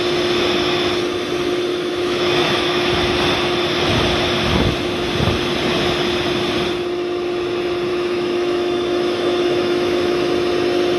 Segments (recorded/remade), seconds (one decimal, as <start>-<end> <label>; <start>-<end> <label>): 0.0-1.7 recorded; 1.7-2.9 remade; 2.9-7.9 recorded; 7.9-10.3 remade; 10.3-11.0 recorded